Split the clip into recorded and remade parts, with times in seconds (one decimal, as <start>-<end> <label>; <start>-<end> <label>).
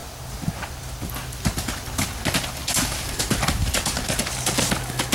0.0-5.1 recorded